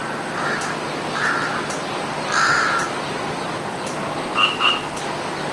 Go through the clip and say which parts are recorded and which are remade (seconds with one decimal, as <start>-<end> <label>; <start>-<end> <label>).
0.0-4.3 recorded; 4.3-5.0 remade; 5.0-5.5 recorded